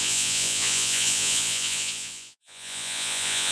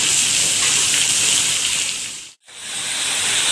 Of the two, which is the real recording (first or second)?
second